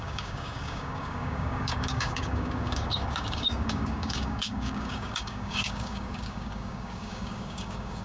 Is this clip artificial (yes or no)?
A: yes